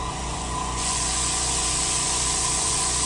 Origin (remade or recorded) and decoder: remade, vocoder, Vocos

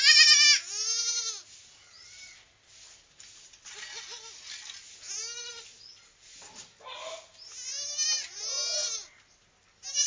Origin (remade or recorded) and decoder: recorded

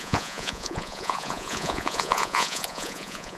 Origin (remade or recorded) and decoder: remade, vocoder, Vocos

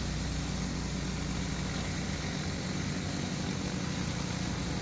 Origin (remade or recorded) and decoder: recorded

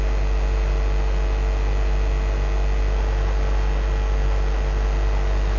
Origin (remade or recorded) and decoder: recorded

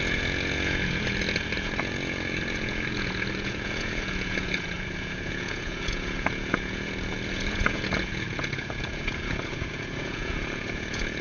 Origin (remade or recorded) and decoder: remade, vocoder, Vocos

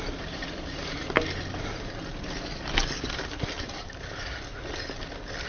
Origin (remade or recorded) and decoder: recorded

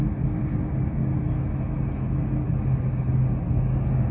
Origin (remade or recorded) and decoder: recorded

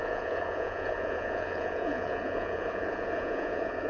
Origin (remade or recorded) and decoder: remade, vocoder, Vocos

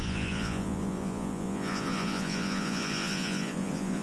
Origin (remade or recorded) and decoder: remade, vocoder, Vocos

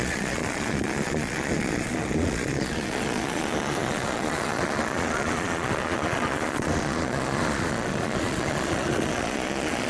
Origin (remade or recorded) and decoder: remade, vocoder, Vocos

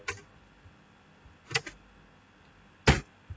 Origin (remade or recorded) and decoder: recorded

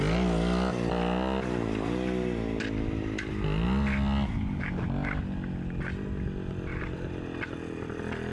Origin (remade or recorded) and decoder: recorded